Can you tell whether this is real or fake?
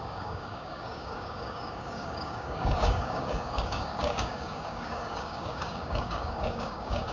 fake